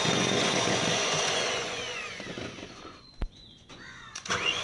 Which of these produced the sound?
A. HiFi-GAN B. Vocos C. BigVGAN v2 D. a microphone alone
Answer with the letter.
B